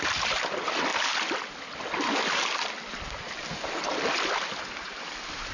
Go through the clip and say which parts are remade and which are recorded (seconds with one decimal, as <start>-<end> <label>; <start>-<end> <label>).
0.0-5.5 recorded